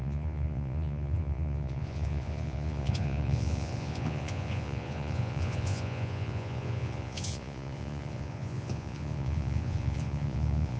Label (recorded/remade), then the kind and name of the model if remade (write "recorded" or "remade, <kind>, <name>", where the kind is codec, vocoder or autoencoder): remade, vocoder, Vocos